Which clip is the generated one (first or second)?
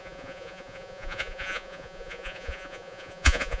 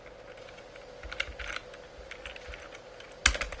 first